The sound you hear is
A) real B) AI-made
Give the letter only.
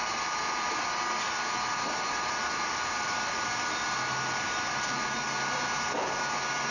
A